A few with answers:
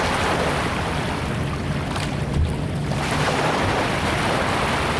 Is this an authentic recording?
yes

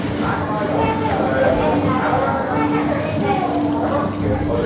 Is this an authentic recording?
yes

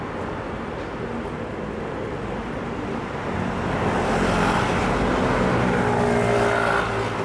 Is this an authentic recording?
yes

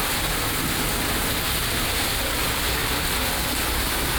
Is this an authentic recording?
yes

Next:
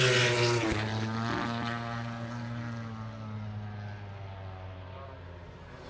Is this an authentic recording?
yes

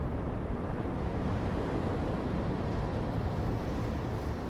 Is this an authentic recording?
yes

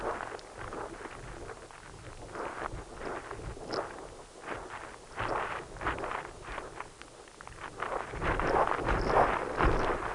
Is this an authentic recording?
yes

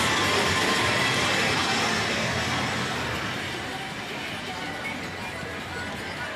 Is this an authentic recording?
yes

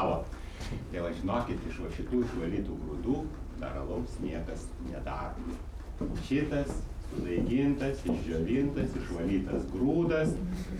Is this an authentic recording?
yes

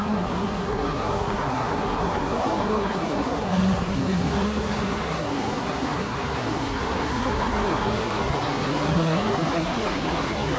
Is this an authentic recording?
no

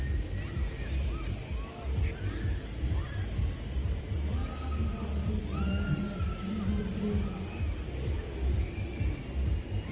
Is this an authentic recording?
yes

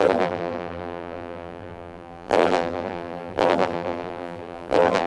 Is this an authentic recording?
no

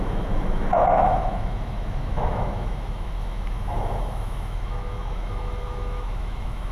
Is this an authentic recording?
no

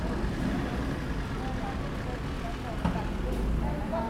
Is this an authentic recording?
yes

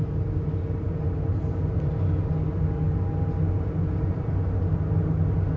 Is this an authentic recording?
yes